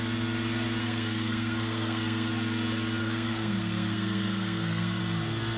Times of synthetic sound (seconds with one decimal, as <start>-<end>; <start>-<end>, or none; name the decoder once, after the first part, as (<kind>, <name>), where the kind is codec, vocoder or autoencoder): 0.8-2.3 (codec, SNAC); 3.0-5.0